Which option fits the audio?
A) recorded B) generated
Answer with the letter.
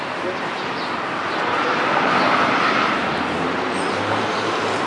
B